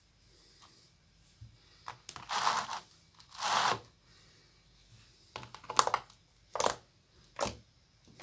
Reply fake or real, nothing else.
real